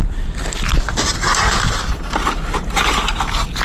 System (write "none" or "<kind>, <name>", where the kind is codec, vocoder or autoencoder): vocoder, BigVGAN v2